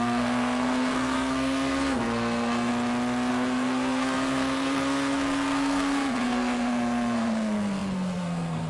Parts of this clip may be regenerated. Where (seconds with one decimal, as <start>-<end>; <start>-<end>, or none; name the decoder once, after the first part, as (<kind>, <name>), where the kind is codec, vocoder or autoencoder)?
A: 0.0-2.7 (codec, SNAC); 3.3-8.7